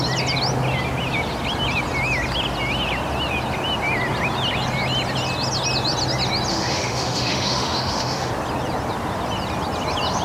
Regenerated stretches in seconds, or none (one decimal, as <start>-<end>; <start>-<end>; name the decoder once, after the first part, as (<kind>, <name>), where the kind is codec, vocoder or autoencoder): 6.5-8.3 (autoencoder, DAC-VAE)